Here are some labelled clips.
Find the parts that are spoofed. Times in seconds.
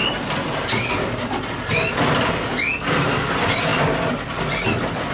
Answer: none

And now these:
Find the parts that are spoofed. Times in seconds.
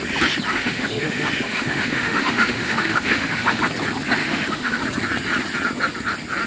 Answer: 0.5-3.6 (autoencoder, DAC-VAE); 4.2-4.8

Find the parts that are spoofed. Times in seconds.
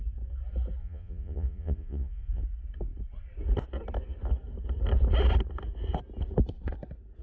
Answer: 0.8-2.4 (vocoder, Vocos)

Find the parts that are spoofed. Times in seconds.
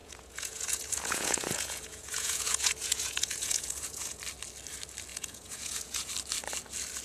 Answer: 0.0-4.2 (vocoder, Vocos); 5.1-6.1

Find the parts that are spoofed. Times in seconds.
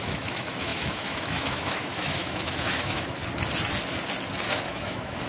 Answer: 0.0-3.2 (autoencoder, DAC-VAE); 4.5-5.3